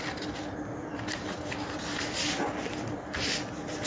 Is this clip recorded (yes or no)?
yes